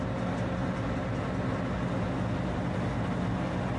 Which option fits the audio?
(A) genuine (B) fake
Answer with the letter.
A